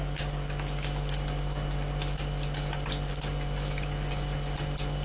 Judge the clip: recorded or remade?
recorded